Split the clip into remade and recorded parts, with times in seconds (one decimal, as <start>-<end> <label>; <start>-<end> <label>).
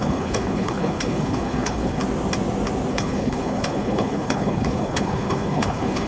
0.0-2.0 remade; 2.0-2.9 recorded; 2.9-6.1 remade